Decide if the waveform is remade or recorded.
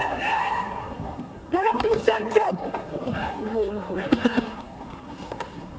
remade